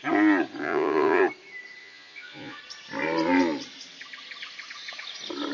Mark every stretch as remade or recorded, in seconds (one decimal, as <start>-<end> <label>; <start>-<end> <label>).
0.0-0.6 recorded; 0.6-1.2 remade; 1.2-1.8 recorded; 1.8-2.6 remade; 2.6-5.5 recorded